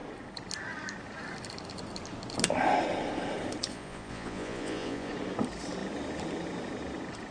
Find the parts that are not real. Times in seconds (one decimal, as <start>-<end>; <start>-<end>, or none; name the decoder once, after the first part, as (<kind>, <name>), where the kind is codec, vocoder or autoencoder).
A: 3.7-5.1 (vocoder, Vocos)

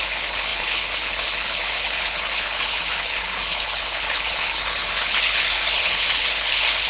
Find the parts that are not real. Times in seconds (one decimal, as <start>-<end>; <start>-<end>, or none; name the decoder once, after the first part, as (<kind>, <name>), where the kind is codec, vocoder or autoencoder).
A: 0.0-6.9 (codec, HILCodec)

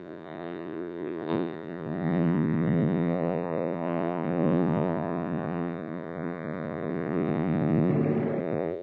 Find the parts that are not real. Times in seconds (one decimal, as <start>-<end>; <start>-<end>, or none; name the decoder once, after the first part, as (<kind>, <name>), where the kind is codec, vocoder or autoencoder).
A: 0.0-7.9 (vocoder, Vocos); 8.4-8.8

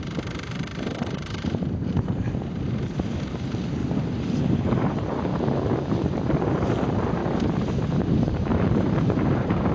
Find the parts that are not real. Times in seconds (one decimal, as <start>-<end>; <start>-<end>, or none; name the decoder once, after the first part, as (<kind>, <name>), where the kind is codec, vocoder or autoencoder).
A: 0.0-3.8 (vocoder, BigVGAN v2); 4.4-7.2; 7.9-9.7

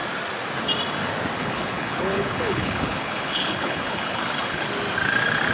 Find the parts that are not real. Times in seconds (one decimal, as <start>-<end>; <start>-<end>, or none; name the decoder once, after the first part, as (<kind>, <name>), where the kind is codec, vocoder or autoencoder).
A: 1.4-4.7 (codec, HILCodec)

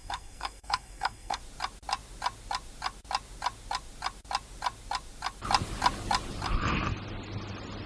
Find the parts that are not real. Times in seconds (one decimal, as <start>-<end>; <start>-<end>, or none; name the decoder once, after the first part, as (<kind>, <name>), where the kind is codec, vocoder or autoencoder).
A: 0.0-1.4 (codec, SNAC)

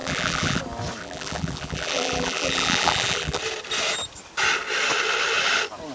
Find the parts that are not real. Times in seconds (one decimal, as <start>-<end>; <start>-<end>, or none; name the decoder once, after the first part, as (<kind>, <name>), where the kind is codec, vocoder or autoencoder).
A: 0.0-0.6 (vocoder, BigVGAN v2); 1.0-3.4